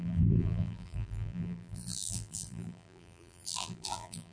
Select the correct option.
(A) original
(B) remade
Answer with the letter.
B